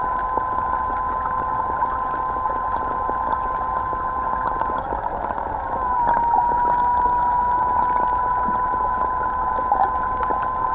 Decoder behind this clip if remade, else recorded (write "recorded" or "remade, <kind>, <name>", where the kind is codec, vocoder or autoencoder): recorded